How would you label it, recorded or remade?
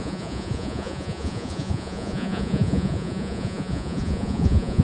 remade